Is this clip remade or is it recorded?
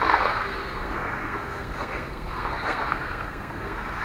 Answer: remade